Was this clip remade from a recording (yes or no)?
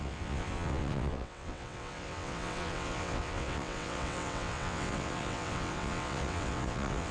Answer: yes